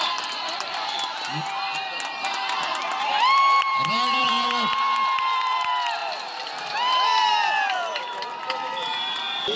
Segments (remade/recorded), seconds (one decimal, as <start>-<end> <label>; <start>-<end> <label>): 0.0-1.2 remade; 1.2-2.9 recorded; 2.9-9.6 remade